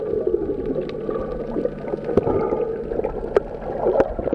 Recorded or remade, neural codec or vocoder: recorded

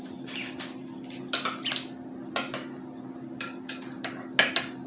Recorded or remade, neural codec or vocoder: recorded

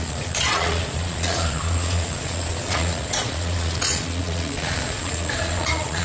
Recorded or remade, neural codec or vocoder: remade, vocoder, Vocos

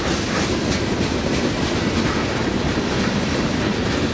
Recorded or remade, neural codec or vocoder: recorded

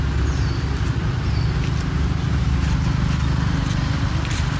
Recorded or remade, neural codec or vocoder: recorded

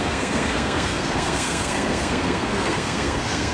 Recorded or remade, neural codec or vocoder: remade, codec, SNAC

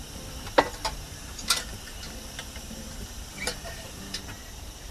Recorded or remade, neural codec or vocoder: remade, vocoder, BigVGAN v2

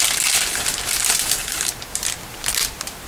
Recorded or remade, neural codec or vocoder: recorded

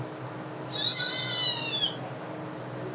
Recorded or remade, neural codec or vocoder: recorded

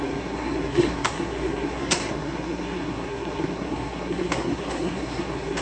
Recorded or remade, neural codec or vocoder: remade, codec, SNAC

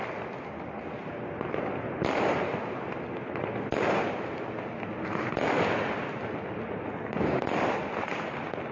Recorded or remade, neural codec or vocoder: recorded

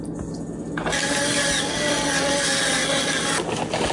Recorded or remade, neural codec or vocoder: recorded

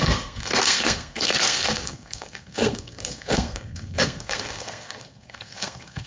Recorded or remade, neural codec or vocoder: remade, codec, SNAC